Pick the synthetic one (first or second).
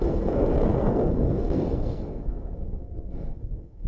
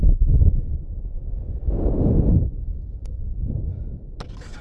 first